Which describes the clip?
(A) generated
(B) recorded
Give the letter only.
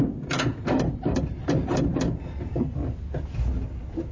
B